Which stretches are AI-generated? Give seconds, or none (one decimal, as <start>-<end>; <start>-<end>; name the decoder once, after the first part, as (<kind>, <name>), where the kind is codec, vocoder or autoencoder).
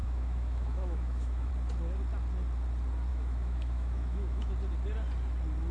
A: 0.0-1.5 (autoencoder, DAC-VAE); 3.1-4.5